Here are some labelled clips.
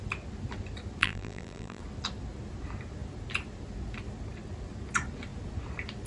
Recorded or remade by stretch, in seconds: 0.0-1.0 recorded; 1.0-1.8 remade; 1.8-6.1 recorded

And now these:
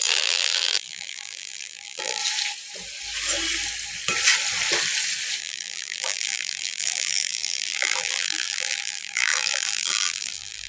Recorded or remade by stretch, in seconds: 0.0-2.2 remade; 2.2-5.4 recorded; 5.4-10.7 remade

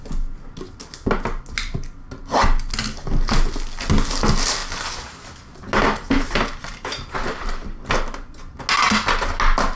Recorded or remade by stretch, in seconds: 0.0-6.7 recorded; 6.7-7.8 remade; 7.8-9.8 recorded

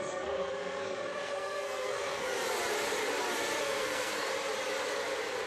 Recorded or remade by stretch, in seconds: 0.0-2.3 remade; 2.3-3.6 recorded; 3.6-4.3 remade; 4.3-5.5 recorded

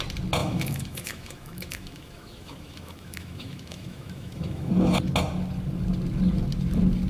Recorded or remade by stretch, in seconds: 0.0-0.4 recorded; 0.4-4.7 remade; 4.7-7.1 recorded

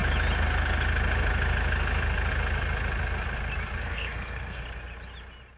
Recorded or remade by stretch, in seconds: 0.0-3.8 recorded; 3.8-4.6 remade; 4.6-5.6 recorded

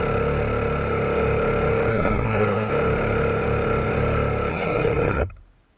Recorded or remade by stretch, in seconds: 0.0-1.9 recorded; 1.9-2.7 remade; 2.7-4.5 recorded; 4.5-5.3 remade; 5.3-5.8 recorded